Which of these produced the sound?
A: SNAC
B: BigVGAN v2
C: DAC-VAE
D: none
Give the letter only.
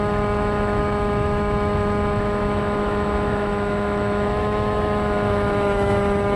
C